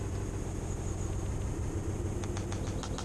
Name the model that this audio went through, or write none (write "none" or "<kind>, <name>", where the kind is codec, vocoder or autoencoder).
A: none